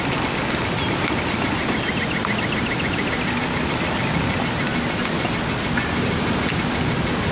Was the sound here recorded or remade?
recorded